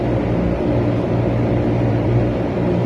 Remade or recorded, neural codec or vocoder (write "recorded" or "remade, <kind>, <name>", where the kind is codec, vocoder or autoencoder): remade, vocoder, BigVGAN v2